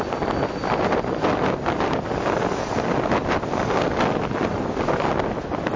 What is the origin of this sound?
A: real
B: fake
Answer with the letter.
A